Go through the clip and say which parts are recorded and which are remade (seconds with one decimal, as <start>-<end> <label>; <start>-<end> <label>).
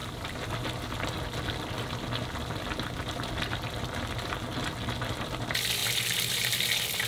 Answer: 0.0-7.1 recorded